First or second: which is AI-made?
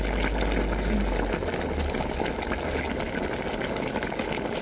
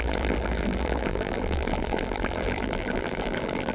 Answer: second